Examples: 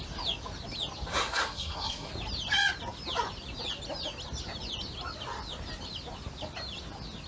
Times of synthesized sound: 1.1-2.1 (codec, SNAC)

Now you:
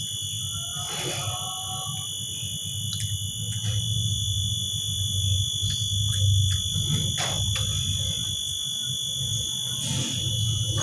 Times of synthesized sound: none

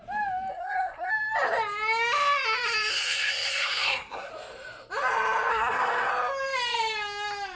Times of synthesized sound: 0.5-1.1 (codec, SNAC); 2.9-4.3; 5.5-6.1

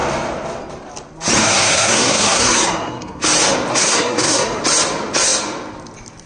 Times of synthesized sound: 1.4-3.2 (codec, SNAC); 3.7-4.6